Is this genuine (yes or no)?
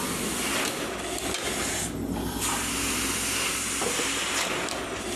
yes